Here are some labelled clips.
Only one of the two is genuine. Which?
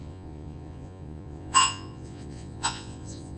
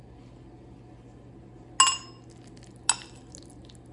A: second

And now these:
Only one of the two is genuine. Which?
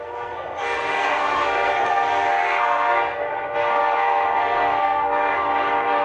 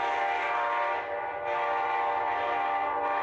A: second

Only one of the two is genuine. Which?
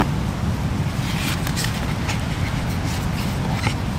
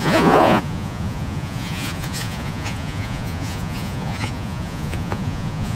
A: first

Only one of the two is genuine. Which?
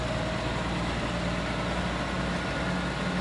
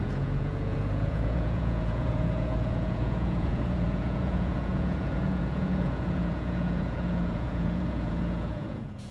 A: first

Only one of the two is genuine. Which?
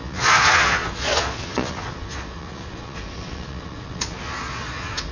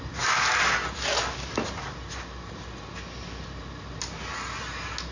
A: second